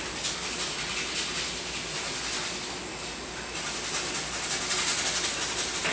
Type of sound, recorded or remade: recorded